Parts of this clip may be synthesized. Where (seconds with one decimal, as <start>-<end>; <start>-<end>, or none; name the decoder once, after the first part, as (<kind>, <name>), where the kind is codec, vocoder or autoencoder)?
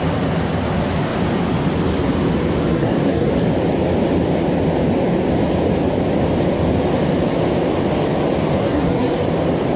2.7-3.3 (codec, SNAC); 8.6-9.2